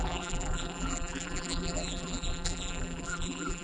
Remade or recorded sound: remade